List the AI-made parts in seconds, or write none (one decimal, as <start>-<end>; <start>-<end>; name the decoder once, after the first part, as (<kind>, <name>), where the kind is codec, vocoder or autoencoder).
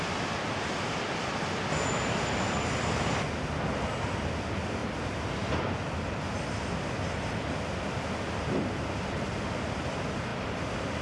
none